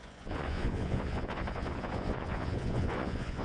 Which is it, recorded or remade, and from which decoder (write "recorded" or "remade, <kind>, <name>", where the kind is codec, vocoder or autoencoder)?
remade, vocoder, Vocos